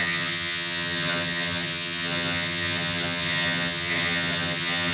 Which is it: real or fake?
fake